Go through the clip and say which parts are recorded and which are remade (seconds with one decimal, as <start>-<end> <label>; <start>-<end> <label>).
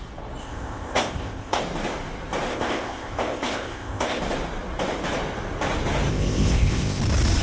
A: 0.0-0.4 recorded; 0.4-1.6 remade; 1.6-2.5 recorded; 2.5-4.2 remade; 4.2-6.1 recorded; 6.1-7.0 remade; 7.0-7.4 recorded